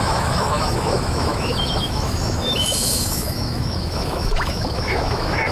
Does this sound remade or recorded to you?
remade